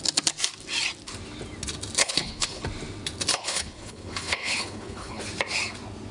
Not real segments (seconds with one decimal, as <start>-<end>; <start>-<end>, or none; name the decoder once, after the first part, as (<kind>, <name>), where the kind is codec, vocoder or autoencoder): 2.0-2.6 (codec, HILCodec); 3.3-5.2